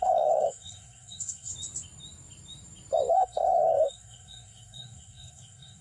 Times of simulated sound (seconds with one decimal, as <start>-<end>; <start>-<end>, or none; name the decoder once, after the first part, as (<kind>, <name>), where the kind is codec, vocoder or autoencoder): 0.0-1.5 (codec, SNAC); 3.1-5.8